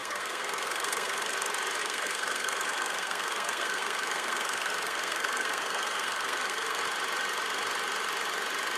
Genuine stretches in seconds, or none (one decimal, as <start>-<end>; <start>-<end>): 1.3-1.8; 6.8-8.8